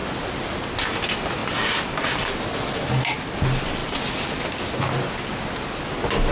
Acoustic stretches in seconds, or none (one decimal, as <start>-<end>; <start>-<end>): 0.0-6.3